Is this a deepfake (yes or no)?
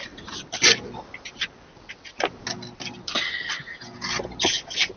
no